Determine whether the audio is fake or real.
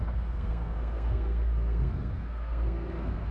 fake